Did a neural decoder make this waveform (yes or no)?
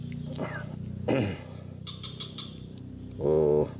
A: no